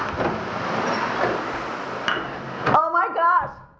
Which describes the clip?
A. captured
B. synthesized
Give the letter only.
A